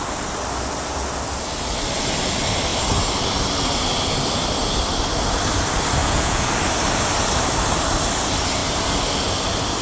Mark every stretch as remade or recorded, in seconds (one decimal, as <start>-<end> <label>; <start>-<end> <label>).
0.0-6.0 recorded; 6.0-6.5 remade; 6.5-9.8 recorded